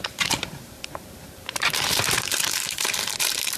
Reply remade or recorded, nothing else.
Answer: remade